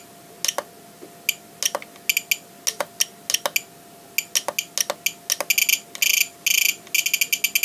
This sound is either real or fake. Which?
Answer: real